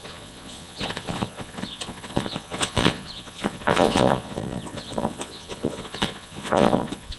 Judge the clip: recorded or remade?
remade